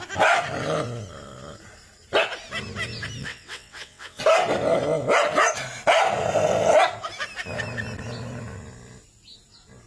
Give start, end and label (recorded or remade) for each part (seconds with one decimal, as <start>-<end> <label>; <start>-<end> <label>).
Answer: 0.0-3.2 recorded; 3.2-4.2 remade; 4.2-9.9 recorded